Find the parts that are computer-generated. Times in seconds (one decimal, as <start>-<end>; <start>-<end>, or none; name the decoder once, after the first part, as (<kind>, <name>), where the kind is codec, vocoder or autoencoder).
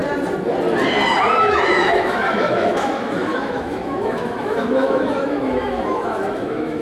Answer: 1.4-6.8 (autoencoder, DAC-VAE)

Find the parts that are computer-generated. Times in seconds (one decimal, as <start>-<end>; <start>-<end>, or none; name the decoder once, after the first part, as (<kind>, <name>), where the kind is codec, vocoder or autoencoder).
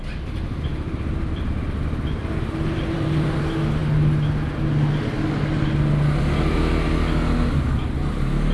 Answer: 0.7-1.5 (vocoder, BigVGAN v2); 2.2-3.4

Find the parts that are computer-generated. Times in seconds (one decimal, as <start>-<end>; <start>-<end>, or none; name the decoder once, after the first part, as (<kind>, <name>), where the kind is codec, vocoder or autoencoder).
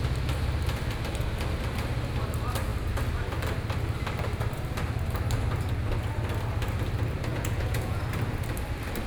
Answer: 7.3-8.0 (vocoder, Vocos)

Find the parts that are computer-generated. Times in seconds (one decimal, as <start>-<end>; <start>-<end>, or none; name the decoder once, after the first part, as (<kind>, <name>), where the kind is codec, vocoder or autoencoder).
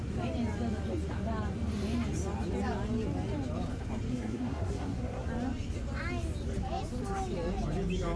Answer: 4.1-5.3 (codec, SNAC)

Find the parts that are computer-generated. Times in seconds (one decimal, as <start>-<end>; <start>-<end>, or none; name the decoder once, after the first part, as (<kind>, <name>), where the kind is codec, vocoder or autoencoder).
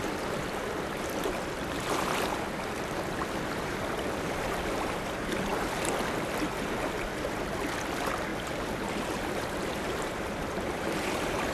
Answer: 0.0-0.6 (vocoder, BigVGAN v2); 3.7-5.5; 7.8-8.3; 9.0-11.5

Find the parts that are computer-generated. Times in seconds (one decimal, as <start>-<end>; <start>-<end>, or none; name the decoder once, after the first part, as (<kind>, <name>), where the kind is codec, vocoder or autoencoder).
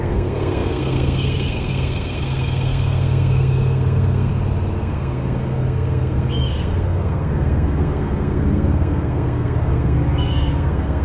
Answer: 0.0-4.3 (codec, SNAC); 4.8-11.0